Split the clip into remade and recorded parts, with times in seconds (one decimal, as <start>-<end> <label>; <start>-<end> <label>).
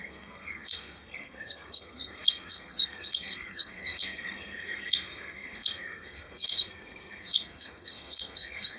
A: 0.0-8.8 remade